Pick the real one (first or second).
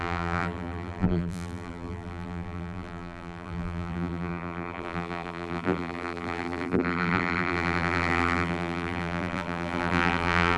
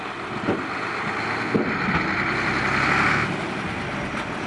second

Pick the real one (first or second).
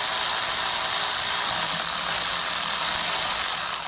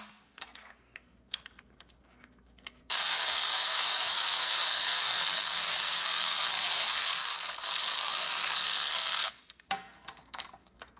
first